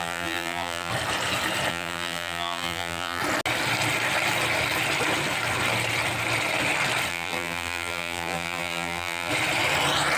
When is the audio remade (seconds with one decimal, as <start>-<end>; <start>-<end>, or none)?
0.0-0.9; 1.7-3.2; 7.1-9.3

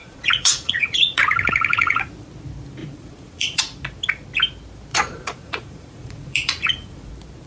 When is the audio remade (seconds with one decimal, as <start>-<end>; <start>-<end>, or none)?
0.0-2.1; 2.8-3.6; 4.9-7.1

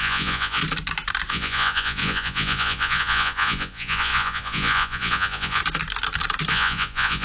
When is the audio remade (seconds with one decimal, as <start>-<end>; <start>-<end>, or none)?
0.0-0.6; 1.3-5.6; 6.5-7.2

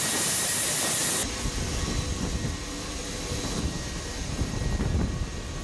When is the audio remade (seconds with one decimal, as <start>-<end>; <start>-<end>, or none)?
none

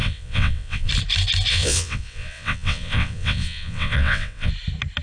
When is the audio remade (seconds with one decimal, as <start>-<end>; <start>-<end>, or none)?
0.0-0.9; 1.5-4.5

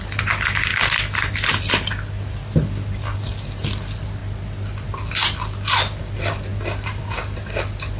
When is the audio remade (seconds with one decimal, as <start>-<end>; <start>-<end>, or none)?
0.0-0.7; 1.7-4.2; 6.0-8.0

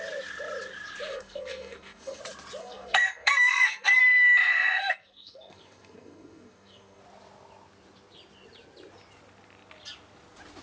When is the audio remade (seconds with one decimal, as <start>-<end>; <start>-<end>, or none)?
1.1-2.2; 2.6-4.0; 4.5-7.0